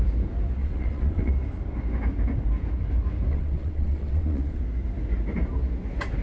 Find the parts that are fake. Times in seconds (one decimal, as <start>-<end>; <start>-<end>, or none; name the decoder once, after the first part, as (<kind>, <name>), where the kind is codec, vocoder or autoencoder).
0.6-1.3 (vocoder, WaveNeXt); 3.3-4.6